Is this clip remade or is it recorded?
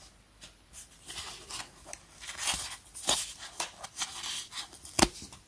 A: recorded